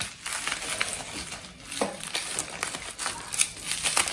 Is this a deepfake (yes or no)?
no